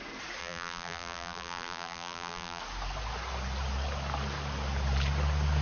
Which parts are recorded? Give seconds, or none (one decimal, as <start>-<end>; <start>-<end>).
0.0-0.4; 2.6-5.6